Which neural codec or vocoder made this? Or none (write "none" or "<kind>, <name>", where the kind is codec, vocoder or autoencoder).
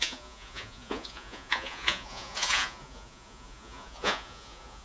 vocoder, Vocos